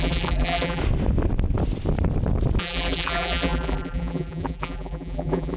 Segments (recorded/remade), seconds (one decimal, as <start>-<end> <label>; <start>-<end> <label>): 0.0-0.8 remade; 0.8-2.6 recorded; 2.6-5.6 remade